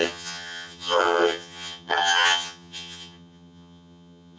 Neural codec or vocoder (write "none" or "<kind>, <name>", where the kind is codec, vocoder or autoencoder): vocoder, HiFi-GAN